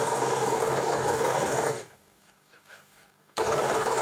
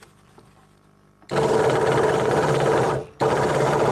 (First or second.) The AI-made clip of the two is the first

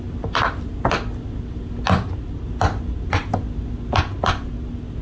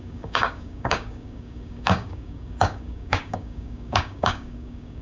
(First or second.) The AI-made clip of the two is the second